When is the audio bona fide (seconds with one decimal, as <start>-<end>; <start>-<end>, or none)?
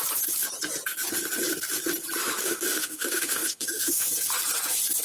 0.0-2.4; 4.1-5.0